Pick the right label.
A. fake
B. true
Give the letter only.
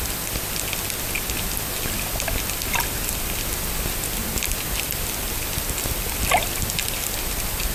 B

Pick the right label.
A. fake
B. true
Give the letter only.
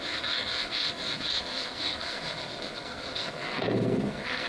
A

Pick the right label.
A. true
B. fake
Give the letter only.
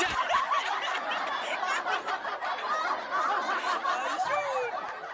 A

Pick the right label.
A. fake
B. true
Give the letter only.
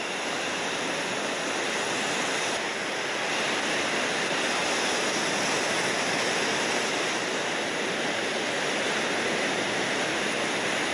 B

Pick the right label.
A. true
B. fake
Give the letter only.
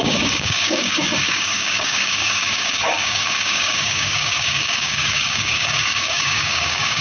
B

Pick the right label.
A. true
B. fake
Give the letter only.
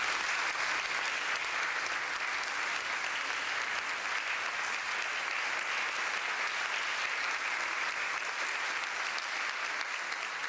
A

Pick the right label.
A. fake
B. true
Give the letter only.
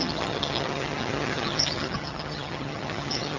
A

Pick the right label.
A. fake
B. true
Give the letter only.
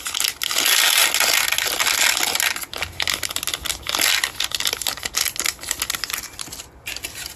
B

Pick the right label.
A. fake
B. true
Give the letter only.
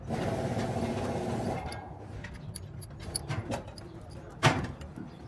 B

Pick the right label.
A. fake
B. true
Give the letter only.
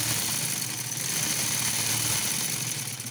B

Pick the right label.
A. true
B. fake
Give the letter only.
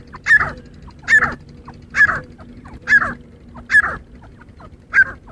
A